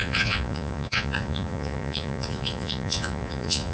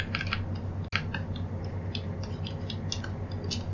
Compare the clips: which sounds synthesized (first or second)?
first